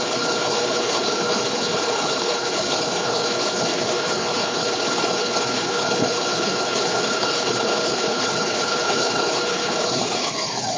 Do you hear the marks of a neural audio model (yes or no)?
yes